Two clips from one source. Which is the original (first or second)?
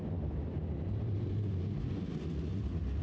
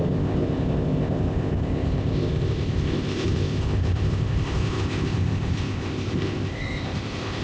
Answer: first